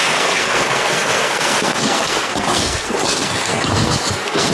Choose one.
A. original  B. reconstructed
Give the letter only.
B